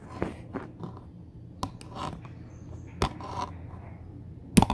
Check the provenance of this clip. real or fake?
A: real